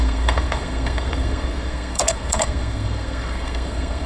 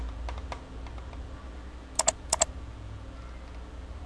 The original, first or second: second